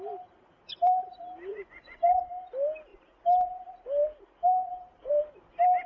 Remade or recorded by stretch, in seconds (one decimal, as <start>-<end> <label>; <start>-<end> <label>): 0.0-1.5 recorded; 1.5-2.2 remade; 2.2-5.9 recorded